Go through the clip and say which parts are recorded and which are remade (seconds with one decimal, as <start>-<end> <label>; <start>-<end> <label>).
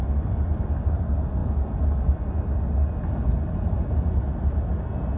0.0-5.2 recorded